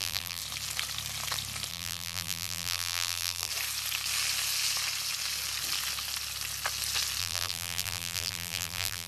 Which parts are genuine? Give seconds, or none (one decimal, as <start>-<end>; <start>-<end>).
0.4-1.7; 3.5-7.2